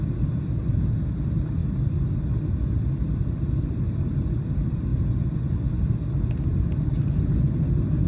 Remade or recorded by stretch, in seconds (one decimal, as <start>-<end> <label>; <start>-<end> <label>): 0.0-8.1 recorded